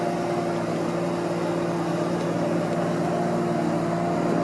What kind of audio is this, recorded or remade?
recorded